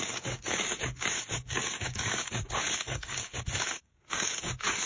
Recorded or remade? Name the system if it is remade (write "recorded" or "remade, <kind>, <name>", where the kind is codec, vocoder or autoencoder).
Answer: remade, codec, DAC